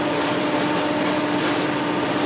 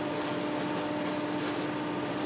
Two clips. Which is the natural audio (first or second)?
second